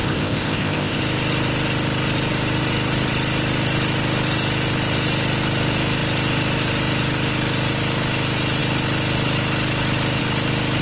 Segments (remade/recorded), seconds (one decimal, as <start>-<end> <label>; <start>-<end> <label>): 0.0-1.0 remade; 1.0-10.8 recorded